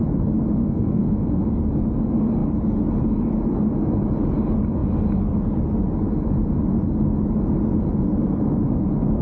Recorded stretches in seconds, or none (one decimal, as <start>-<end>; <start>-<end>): 0.0-0.6; 1.5-9.2

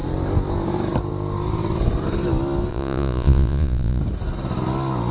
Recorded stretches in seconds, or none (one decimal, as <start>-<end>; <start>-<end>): 0.0-2.7; 4.0-5.1

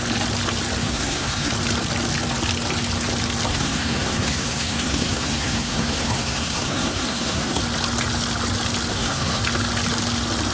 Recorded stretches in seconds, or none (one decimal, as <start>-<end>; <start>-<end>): 0.0-0.8; 1.5-3.5; 7.6-8.9; 9.4-10.5

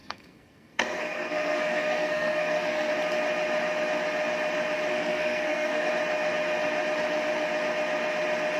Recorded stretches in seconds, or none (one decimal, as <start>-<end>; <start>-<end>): 2.9-4.9; 5.9-8.6